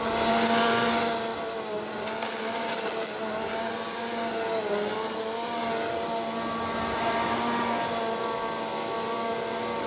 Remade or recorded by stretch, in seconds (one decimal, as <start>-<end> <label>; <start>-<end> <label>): 0.0-9.9 recorded